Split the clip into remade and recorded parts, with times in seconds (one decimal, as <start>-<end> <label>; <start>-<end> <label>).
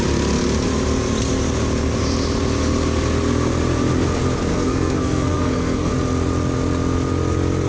0.0-4.5 recorded; 4.5-5.9 remade; 5.9-7.7 recorded